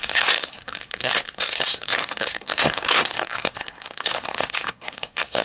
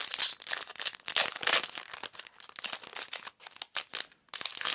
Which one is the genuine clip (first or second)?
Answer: second